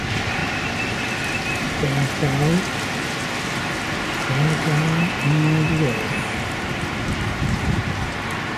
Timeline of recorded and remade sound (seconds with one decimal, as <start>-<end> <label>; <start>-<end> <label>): 0.0-0.4 remade; 0.4-1.7 recorded; 1.7-2.2 remade; 2.2-6.2 recorded; 6.2-8.6 remade